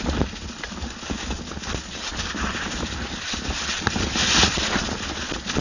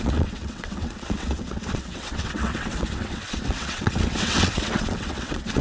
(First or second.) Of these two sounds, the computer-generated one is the second